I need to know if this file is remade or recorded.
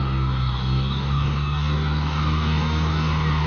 remade